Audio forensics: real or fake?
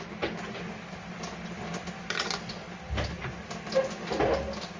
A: real